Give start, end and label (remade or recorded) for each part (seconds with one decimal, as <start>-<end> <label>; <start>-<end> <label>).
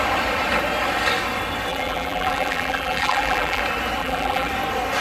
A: 0.0-1.7 recorded; 1.7-3.6 remade; 3.6-4.0 recorded; 4.0-4.5 remade; 4.5-5.0 recorded